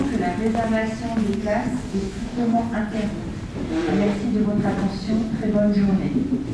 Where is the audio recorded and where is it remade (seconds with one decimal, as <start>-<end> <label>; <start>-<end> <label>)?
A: 0.0-1.8 recorded; 1.8-2.6 remade; 2.6-6.5 recorded